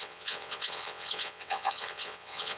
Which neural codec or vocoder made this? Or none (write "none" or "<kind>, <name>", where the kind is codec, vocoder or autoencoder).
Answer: vocoder, WaveNeXt